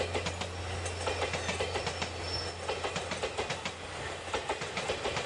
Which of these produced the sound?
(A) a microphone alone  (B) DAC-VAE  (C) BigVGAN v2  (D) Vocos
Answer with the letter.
A